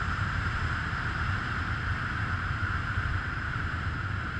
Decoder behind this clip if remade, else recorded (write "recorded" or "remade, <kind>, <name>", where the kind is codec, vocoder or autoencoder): remade, vocoder, BigVGAN v2